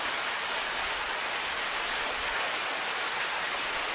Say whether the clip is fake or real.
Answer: real